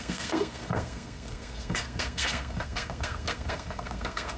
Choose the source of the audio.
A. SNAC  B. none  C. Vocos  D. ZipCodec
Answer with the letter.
A